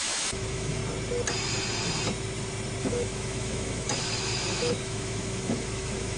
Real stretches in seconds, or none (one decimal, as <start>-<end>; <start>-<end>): 0.8-2.8